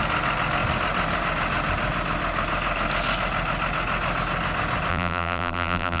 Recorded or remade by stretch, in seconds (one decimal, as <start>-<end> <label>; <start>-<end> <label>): 0.0-4.9 recorded; 4.9-6.0 remade

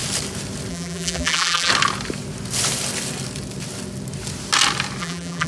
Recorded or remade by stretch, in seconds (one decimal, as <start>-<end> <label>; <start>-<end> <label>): 0.0-0.7 recorded; 0.7-1.7 remade; 1.7-5.0 recorded; 5.0-5.5 remade

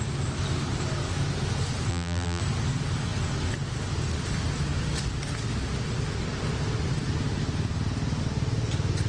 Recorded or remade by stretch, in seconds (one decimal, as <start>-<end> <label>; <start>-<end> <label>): 0.0-1.9 recorded; 1.9-2.4 remade; 2.4-9.1 recorded

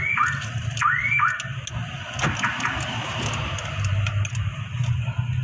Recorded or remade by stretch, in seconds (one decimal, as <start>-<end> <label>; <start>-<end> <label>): 0.0-2.5 recorded; 2.5-4.1 remade; 4.1-5.4 recorded

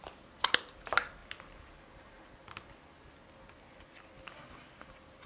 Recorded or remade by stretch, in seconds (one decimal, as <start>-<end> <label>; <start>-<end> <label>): 0.0-5.3 recorded

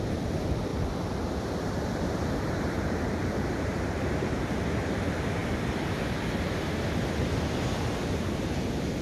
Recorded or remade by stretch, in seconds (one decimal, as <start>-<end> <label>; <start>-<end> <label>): 0.0-0.7 remade; 0.7-2.2 recorded; 2.2-5.4 remade; 5.4-8.1 recorded; 8.1-9.0 remade

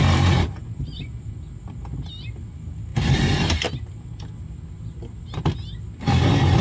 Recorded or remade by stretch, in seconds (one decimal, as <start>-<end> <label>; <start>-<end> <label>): 0.0-1.3 remade; 1.3-6.6 recorded